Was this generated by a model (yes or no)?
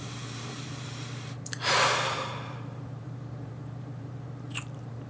yes